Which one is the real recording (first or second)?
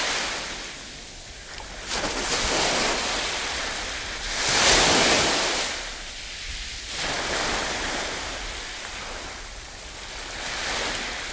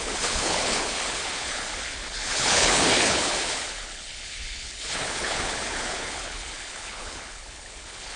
first